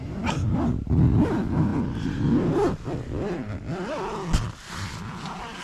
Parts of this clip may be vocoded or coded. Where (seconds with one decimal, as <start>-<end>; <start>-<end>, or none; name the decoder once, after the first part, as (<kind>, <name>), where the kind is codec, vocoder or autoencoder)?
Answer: none